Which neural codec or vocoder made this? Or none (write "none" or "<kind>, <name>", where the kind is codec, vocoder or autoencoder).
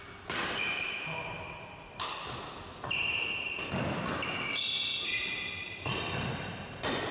none